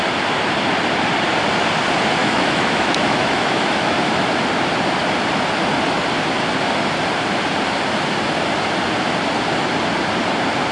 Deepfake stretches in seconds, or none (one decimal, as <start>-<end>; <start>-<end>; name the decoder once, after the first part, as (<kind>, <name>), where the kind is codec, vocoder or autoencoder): 2.2-4.2 (autoencoder, DAC-VAE)